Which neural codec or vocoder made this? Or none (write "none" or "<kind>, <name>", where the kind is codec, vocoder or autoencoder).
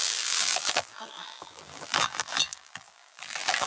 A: vocoder, BigVGAN v2